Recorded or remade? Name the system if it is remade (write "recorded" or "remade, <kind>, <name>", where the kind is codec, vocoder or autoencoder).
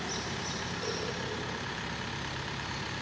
remade, vocoder, BigVGAN v2